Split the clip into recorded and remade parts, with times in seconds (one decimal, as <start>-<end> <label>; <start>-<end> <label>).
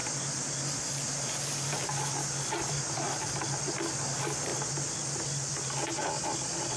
0.0-6.8 recorded